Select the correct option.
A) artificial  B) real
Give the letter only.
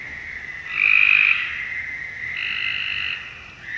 B